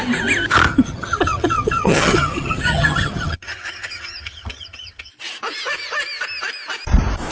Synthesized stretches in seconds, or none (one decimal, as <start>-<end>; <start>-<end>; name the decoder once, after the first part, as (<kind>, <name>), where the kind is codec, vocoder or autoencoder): 0.7-5.1 (vocoder, HiFi-GAN)